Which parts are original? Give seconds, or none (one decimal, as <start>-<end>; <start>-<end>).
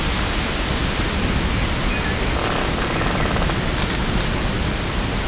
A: 0.0-5.3